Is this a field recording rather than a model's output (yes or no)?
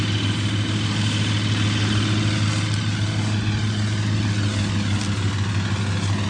yes